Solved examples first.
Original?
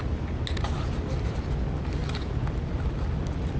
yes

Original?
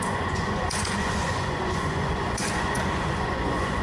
no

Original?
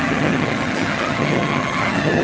no